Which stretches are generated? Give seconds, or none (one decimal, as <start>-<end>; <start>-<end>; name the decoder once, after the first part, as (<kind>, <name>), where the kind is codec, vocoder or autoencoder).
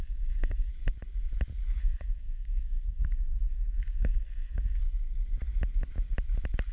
0.0-0.7 (codec, SNAC); 1.8-4.8